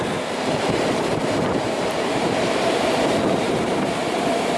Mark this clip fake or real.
fake